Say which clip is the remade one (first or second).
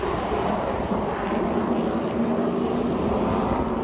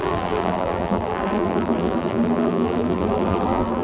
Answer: second